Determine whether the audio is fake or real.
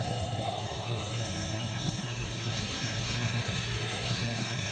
fake